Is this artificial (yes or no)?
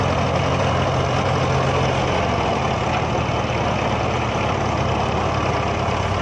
no